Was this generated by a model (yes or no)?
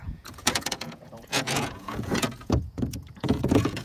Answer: yes